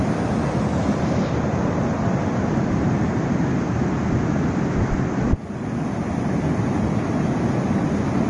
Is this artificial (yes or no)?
no